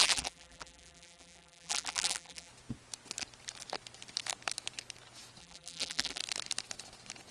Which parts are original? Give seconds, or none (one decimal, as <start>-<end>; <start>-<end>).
2.5-5.4; 6.2-7.3